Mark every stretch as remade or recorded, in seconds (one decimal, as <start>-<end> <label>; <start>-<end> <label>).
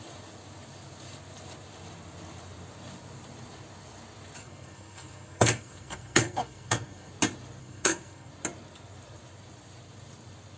0.0-4.4 recorded; 4.4-7.1 remade; 7.1-7.6 recorded; 7.6-8.3 remade; 8.3-10.6 recorded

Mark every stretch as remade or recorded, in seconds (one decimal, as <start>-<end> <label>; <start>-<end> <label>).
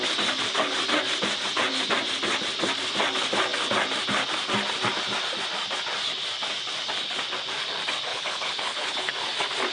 0.0-8.1 recorded; 8.1-9.1 remade; 9.1-9.7 recorded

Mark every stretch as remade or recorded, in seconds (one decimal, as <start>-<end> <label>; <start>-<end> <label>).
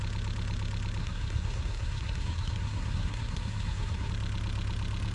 0.0-1.0 recorded; 1.0-4.1 remade; 4.1-5.1 recorded